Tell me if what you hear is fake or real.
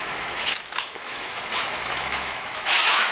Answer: fake